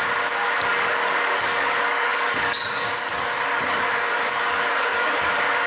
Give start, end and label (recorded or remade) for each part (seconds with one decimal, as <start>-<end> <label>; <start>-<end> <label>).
0.0-0.6 recorded; 0.6-5.7 remade